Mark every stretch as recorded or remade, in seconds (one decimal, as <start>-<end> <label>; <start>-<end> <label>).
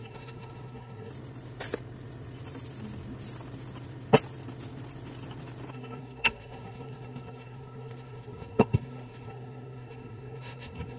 0.0-1.1 remade; 1.1-5.7 recorded; 5.7-11.0 remade